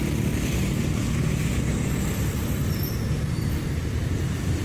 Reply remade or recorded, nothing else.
recorded